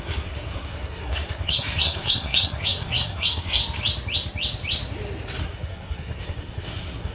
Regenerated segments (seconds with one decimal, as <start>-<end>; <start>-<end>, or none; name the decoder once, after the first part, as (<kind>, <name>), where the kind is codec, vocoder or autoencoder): 0.0-3.6 (codec, SNAC); 5.4-7.1